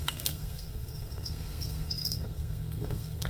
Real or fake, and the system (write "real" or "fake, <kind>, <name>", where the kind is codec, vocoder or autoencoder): fake, codec, SNAC